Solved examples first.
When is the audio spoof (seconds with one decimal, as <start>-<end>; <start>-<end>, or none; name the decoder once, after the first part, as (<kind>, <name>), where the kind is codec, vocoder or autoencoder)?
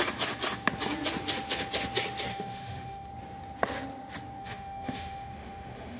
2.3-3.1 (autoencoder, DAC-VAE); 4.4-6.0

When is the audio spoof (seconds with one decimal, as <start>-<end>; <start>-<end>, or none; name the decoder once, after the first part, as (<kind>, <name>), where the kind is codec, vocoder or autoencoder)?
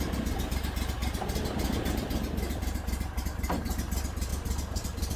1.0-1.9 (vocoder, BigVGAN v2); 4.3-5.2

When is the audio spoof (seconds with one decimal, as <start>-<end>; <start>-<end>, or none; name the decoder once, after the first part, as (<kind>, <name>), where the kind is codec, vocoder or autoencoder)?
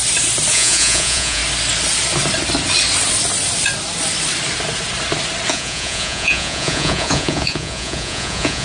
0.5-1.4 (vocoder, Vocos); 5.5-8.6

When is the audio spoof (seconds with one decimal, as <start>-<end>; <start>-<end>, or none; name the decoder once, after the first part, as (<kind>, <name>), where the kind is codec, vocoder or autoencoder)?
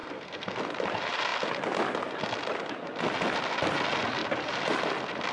0.0-0.6 (codec, SNAC)